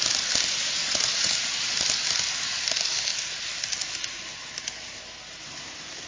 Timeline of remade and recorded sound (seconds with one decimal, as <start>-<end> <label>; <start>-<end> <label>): 0.0-0.8 recorded; 0.8-1.3 remade; 1.3-6.1 recorded